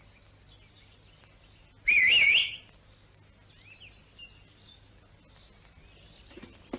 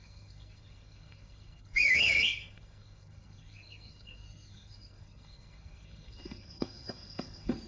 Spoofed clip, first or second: second